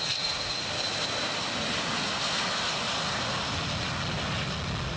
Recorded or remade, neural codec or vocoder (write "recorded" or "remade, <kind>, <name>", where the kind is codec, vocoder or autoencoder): recorded